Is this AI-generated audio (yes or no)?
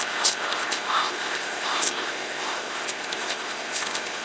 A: yes